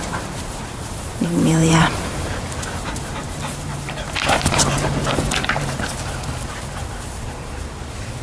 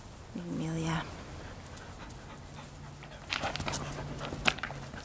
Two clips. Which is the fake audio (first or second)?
first